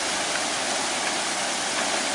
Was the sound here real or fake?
real